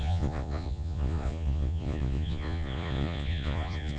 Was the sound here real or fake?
fake